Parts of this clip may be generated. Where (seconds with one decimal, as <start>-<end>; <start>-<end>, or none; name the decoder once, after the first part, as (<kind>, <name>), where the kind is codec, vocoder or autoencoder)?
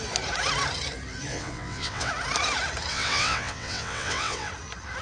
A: 1.3-2.1 (vocoder, WaveNeXt); 2.9-4.5